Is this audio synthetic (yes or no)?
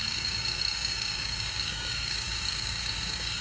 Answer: yes